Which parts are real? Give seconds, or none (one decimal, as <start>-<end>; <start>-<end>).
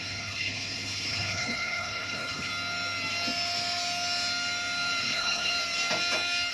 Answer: 2.5-5.0; 5.5-6.5